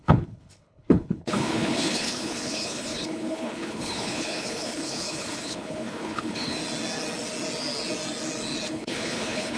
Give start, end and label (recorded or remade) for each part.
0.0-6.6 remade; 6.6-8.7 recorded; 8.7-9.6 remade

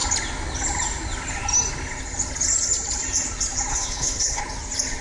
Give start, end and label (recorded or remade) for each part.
0.0-3.7 recorded; 3.7-4.4 remade; 4.4-5.0 recorded

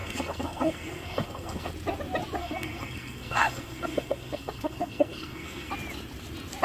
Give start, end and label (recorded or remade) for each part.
0.0-1.7 remade; 1.7-2.4 recorded; 2.4-5.7 remade; 5.7-6.6 recorded

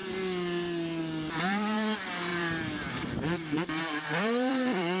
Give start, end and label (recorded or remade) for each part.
0.0-1.0 recorded; 1.0-5.0 remade